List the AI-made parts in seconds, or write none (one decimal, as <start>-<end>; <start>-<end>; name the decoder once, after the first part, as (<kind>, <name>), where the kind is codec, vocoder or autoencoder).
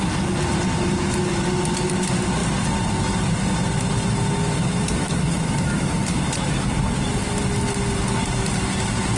5.0-6.2 (autoencoder, DAC-VAE)